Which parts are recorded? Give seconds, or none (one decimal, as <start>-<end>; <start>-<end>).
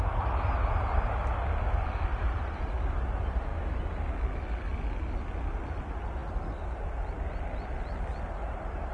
0.0-2.1; 2.6-8.9